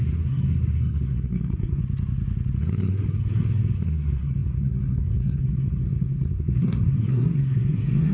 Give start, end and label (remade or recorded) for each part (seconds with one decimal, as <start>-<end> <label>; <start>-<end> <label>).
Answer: 0.0-1.8 remade; 1.8-2.6 recorded; 2.6-8.1 remade